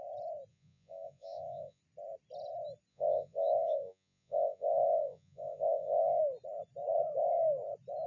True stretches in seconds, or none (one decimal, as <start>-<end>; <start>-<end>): 0.0-0.5; 1.8-2.9; 6.2-8.1